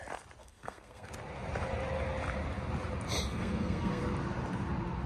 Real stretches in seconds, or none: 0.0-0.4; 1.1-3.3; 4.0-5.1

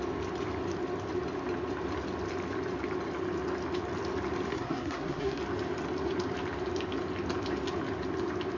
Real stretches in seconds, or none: 0.0-4.5; 5.4-8.6

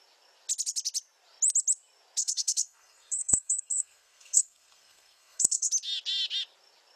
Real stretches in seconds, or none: 0.0-2.2; 5.7-7.0

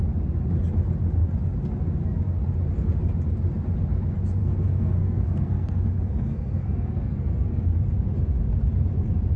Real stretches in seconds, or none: 0.0-4.4; 7.9-9.4

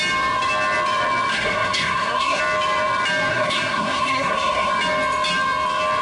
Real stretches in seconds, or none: 0.0-1.3; 2.4-3.3; 4.7-6.0